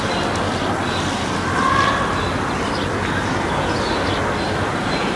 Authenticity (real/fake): real